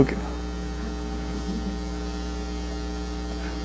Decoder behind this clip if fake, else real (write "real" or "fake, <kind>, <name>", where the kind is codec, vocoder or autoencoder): real